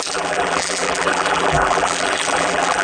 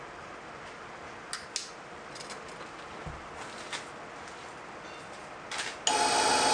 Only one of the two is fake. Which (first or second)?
first